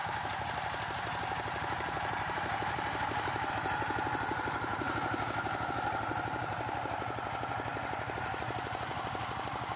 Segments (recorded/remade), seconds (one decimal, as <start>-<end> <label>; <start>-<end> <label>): 0.0-3.5 remade; 3.5-4.7 recorded; 4.7-5.7 remade; 5.7-9.8 recorded